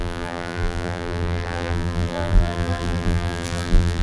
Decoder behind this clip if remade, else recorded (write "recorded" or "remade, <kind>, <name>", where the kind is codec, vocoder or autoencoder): remade, vocoder, BigVGAN v2